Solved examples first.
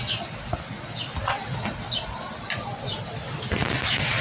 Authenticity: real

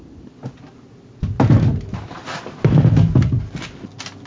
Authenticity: real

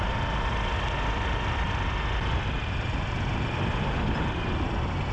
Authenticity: real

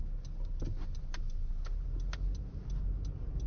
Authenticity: real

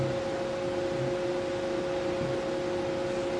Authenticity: real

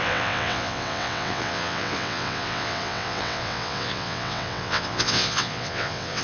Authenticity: fake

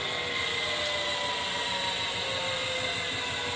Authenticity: real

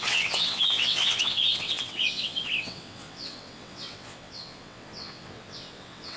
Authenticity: fake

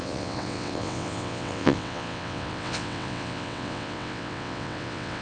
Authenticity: fake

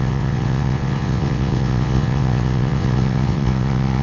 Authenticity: fake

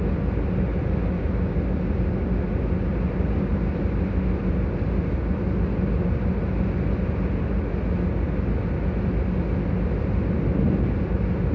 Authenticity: real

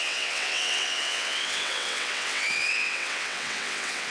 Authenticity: fake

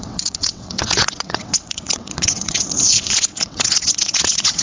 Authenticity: fake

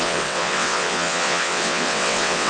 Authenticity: fake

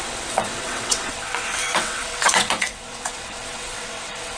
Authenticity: fake